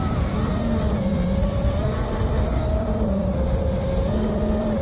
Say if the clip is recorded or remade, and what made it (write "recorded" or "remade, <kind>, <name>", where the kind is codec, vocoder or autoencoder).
remade, vocoder, BigVGAN v2